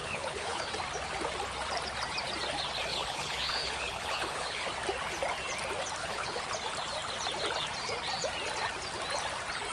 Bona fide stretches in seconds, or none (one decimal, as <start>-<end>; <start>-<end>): 0.7-2.9; 4.7-6.0; 6.5-9.7